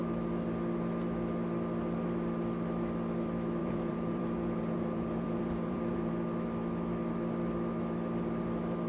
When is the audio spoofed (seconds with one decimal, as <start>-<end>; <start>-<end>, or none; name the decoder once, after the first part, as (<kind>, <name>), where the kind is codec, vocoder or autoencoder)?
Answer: 3.6-6.1 (vocoder, Vocos)